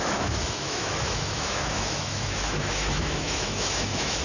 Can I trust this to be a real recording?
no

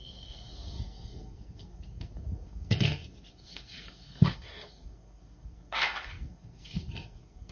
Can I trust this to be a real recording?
no